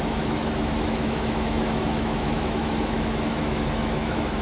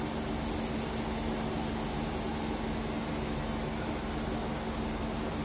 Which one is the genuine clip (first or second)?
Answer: second